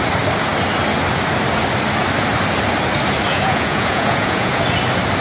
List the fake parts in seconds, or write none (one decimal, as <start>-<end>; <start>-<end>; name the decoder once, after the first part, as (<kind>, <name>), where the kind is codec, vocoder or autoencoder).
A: 3.3-4.6 (vocoder, Vocos)